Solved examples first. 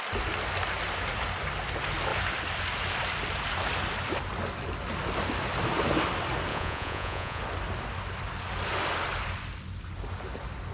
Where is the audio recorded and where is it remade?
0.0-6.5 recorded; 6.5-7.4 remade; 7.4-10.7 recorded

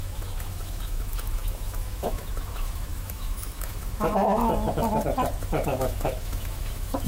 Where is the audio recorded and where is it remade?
0.0-4.5 remade; 4.5-5.4 recorded; 5.4-7.1 remade